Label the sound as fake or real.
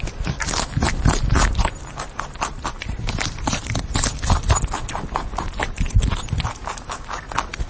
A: real